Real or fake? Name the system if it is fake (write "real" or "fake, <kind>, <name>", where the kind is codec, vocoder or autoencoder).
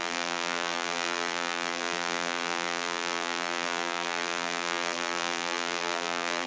fake, vocoder, BigVGAN v2